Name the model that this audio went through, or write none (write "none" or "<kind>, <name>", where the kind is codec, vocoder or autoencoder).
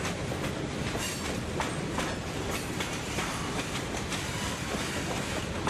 none